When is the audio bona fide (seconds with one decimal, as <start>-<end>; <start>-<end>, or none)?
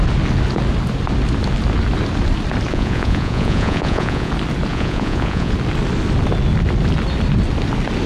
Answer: 0.0-2.7; 4.3-4.7; 5.5-8.1